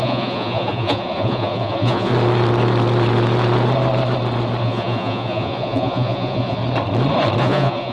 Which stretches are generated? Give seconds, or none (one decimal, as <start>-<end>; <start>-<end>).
0.0-2.1; 4.6-6.6; 7.4-7.9